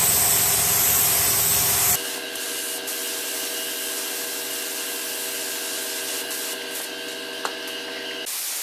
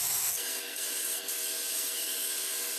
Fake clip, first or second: second